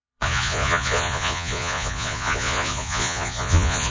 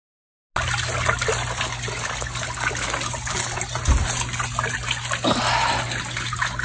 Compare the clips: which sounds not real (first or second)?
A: first